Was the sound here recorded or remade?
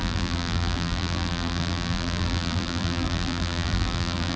remade